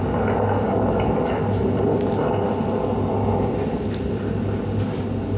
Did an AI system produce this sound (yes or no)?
no